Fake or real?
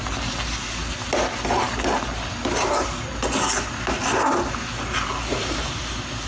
real